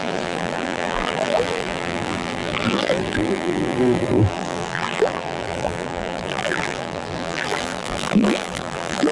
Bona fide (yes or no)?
no